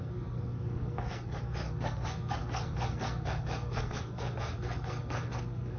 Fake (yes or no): yes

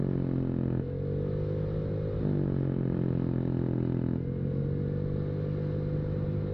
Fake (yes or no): no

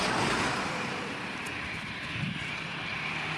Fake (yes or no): yes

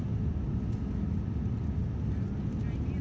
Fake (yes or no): no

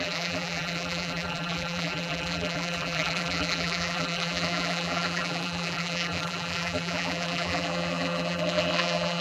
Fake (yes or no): yes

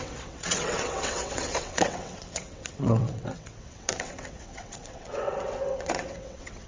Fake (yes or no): yes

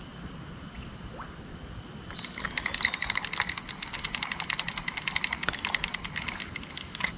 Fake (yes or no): no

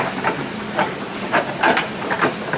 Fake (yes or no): no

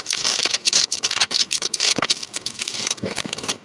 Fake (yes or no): yes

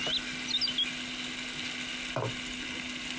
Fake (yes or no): no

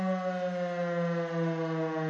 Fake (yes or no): no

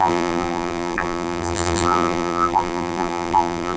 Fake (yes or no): yes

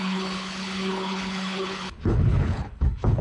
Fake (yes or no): yes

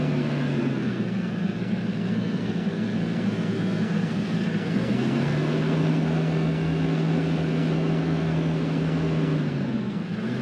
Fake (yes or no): yes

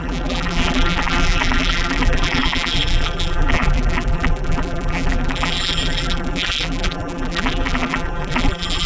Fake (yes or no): yes